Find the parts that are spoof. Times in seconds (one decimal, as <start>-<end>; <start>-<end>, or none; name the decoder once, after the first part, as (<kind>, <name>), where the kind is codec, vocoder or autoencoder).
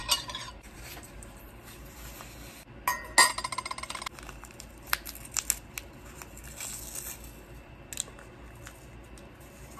0.0-1.5 (vocoder, BigVGAN v2)